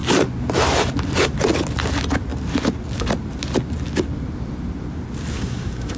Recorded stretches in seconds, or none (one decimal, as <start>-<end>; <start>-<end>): 0.0-5.3